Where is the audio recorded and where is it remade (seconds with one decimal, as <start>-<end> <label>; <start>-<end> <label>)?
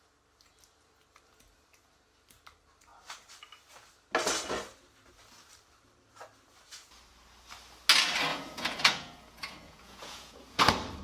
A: 0.0-8.3 recorded; 8.3-10.6 remade; 10.6-11.0 recorded